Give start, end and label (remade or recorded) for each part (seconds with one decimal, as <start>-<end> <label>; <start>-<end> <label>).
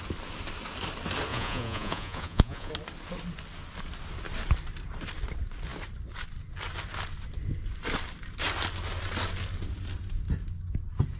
0.0-1.3 recorded; 1.3-2.7 remade; 2.7-11.2 recorded